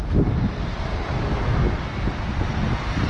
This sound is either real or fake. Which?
real